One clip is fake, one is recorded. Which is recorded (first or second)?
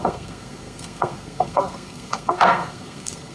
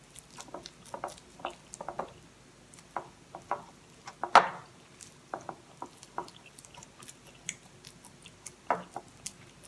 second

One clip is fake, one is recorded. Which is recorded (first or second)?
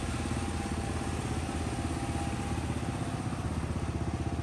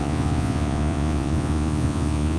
first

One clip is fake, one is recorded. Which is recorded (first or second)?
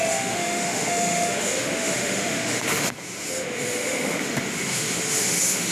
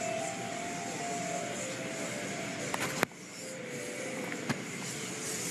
second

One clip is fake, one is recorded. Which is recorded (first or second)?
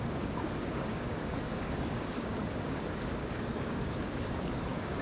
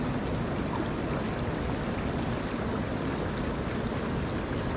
second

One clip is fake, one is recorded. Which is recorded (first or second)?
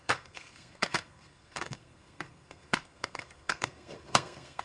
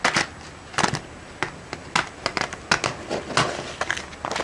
second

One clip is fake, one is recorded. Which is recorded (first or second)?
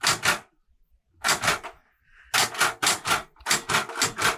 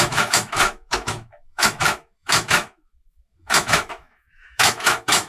first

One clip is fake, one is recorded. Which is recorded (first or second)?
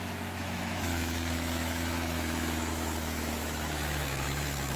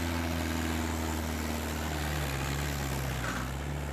second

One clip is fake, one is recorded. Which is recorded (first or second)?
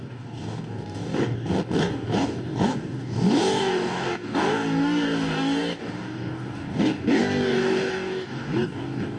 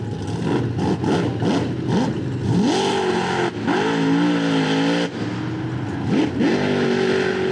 second